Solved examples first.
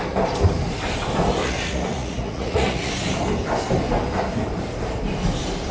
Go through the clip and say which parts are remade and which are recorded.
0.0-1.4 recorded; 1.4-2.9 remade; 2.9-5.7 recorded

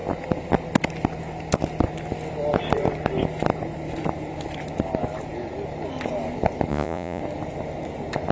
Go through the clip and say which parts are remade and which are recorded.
0.0-6.7 recorded; 6.7-7.2 remade; 7.2-8.3 recorded

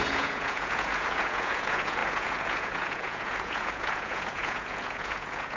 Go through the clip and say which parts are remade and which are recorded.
0.0-5.6 remade

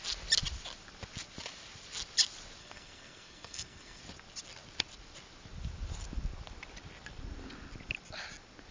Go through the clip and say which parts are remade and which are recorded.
0.0-2.6 recorded; 2.6-4.0 remade; 4.0-8.7 recorded